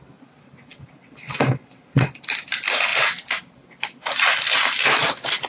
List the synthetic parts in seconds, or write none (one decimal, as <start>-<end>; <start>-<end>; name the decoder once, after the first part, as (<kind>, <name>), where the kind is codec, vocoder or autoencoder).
none